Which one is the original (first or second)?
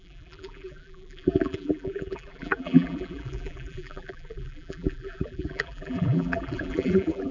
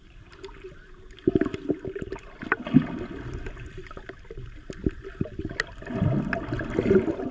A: second